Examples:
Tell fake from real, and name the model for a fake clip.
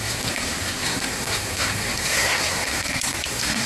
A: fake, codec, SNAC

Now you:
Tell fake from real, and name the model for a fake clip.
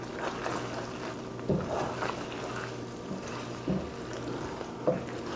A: real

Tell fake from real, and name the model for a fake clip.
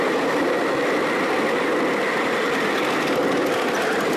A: real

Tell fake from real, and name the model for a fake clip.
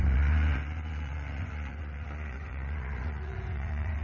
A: fake, vocoder, Vocos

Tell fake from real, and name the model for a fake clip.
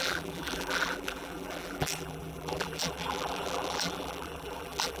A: fake, vocoder, BigVGAN v2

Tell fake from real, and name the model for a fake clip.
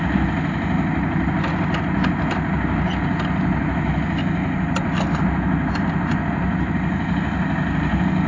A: real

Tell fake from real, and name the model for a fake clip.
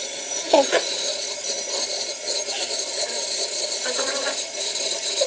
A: fake, vocoder, Vocos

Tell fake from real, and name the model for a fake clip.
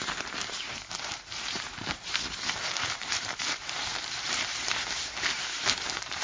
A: fake, vocoder, BigVGAN v2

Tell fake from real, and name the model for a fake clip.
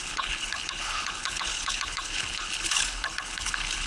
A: fake, codec, HILCodec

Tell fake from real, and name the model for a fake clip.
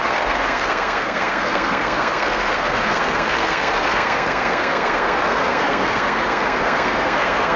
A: fake, codec, SNAC